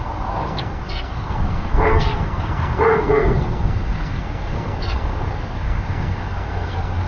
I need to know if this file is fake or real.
fake